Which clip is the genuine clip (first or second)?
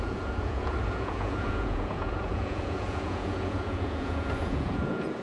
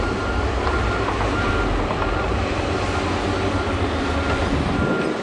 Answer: second